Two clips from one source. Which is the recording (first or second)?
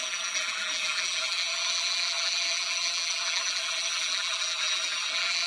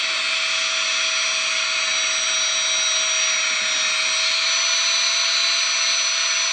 second